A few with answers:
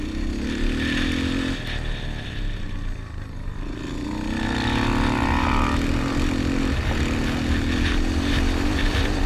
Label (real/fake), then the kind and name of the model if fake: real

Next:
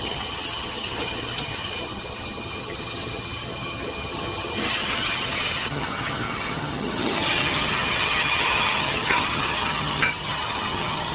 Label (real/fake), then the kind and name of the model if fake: fake, vocoder, HiFi-GAN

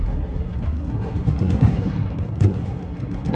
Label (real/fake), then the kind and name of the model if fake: fake, codec, SNAC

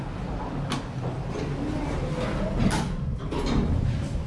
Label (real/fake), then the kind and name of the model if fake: real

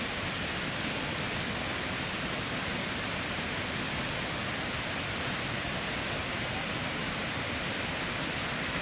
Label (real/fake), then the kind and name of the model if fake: real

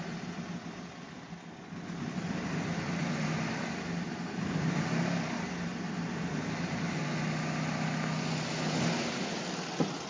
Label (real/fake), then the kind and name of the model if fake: real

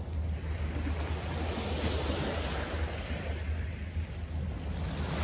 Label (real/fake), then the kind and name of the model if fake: real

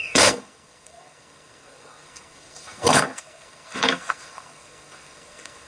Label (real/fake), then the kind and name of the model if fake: fake, codec, SNAC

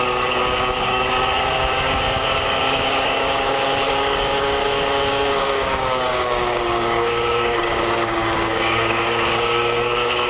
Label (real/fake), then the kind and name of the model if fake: fake, codec, DAC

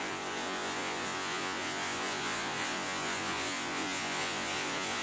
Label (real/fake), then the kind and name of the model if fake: fake, vocoder, Vocos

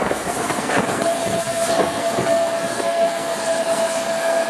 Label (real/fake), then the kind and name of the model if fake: fake, codec, SNAC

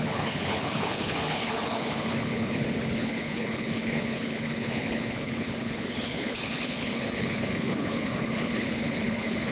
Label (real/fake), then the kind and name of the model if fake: fake, codec, HILCodec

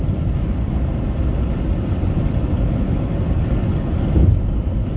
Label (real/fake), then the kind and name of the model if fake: real